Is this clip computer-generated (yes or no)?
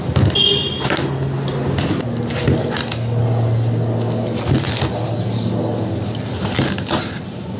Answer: no